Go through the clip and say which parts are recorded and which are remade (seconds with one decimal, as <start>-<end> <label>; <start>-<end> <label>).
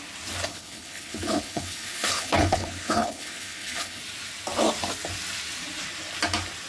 0.0-0.5 recorded; 0.5-4.0 remade; 4.0-6.7 recorded